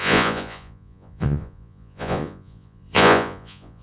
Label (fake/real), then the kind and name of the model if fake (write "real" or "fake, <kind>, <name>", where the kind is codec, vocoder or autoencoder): fake, vocoder, Vocos